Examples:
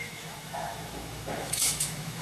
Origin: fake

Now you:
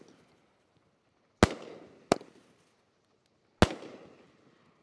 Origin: real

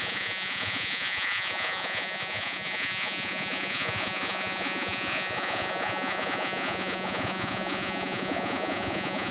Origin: fake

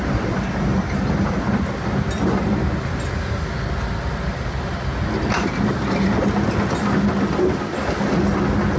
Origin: real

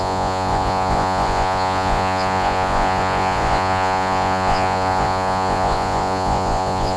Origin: fake